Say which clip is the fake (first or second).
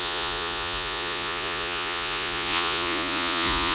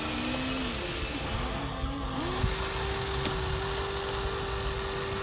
first